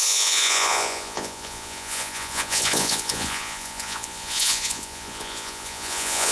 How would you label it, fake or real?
fake